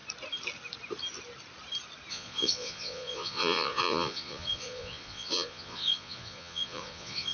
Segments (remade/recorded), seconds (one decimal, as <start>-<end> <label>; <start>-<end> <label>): 0.0-2.1 recorded; 2.1-7.3 remade